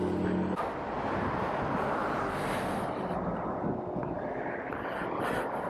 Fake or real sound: real